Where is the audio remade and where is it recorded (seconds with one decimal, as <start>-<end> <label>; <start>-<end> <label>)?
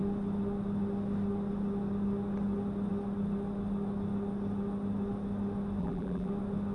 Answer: 0.0-5.8 recorded; 5.8-6.3 remade; 6.3-6.7 recorded